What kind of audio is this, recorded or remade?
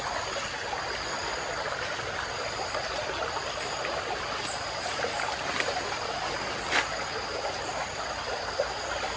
recorded